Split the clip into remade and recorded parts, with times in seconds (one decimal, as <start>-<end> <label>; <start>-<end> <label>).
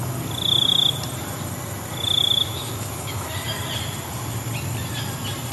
0.0-2.5 recorded; 2.5-3.3 remade; 3.3-5.5 recorded